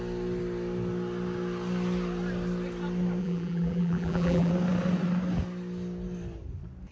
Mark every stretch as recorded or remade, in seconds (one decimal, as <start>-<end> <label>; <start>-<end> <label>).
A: 0.0-3.2 recorded; 3.2-4.5 remade; 4.5-6.9 recorded